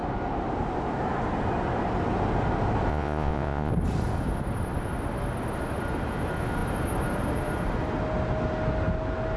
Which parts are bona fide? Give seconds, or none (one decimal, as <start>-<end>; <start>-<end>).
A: 0.0-2.9; 3.7-9.4